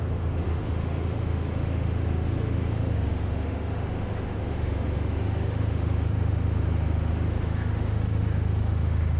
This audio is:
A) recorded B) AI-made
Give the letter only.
B